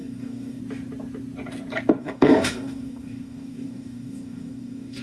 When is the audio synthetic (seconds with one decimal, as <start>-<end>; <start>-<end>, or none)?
0.0-0.6; 2.0-5.0